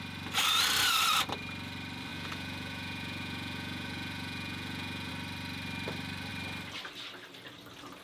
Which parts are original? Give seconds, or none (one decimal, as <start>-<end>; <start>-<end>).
0.0-2.1; 5.1-8.0